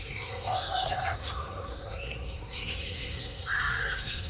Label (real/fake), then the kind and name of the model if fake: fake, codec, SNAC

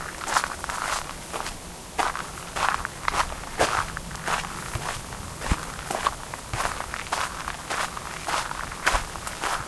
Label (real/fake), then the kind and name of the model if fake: real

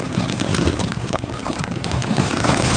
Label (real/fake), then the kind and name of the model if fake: fake, codec, SNAC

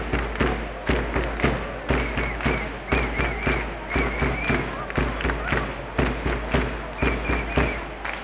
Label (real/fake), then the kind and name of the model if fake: real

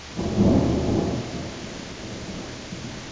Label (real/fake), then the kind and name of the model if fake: real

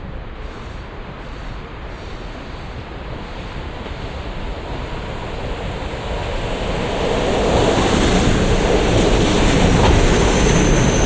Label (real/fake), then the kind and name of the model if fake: real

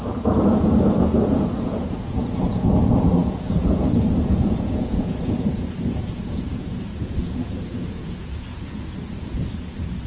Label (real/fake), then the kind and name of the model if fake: fake, vocoder, Vocos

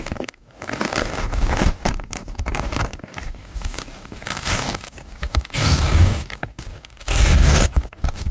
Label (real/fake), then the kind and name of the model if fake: fake, codec, DAC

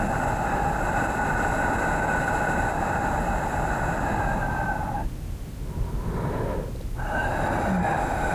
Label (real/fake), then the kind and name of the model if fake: real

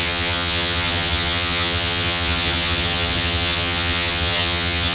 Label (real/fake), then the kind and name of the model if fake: fake, vocoder, HiFi-GAN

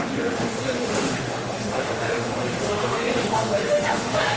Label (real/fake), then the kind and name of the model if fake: fake, autoencoder, DAC-VAE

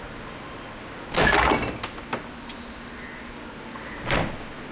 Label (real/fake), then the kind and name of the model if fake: real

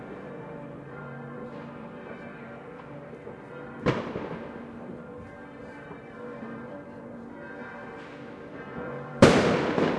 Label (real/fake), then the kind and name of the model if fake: fake, vocoder, BigVGAN v2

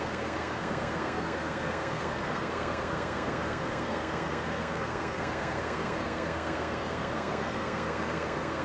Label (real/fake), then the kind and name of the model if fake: fake, codec, SNAC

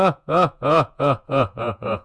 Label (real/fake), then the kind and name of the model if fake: fake, vocoder, Vocos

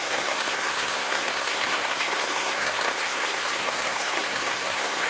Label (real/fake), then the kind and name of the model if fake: fake, codec, SNAC